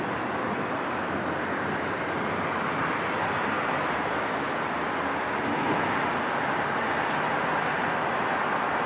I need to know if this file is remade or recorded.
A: recorded